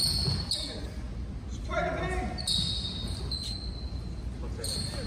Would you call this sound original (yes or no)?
yes